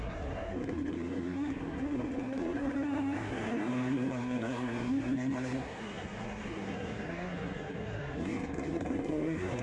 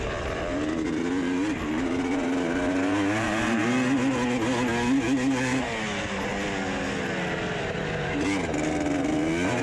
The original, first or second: second